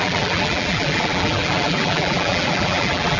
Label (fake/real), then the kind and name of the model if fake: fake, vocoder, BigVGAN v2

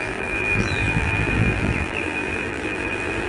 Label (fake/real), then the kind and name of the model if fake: fake, vocoder, BigVGAN v2